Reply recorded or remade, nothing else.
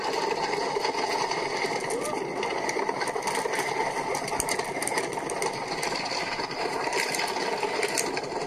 recorded